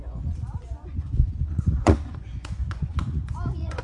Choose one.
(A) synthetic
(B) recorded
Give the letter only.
A